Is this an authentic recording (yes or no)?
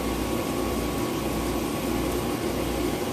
yes